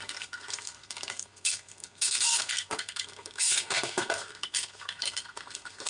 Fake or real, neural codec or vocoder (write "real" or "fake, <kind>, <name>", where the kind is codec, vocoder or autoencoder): fake, codec, SNAC